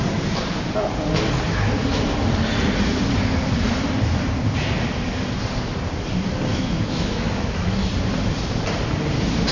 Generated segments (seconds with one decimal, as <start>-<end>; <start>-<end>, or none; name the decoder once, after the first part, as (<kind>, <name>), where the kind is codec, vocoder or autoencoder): 6.5-7.9 (autoencoder, DAC-VAE)